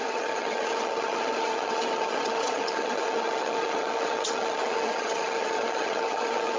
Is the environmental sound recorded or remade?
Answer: remade